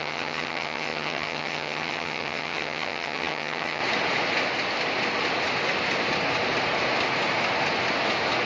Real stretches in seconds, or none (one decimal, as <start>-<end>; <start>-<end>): 3.8-8.5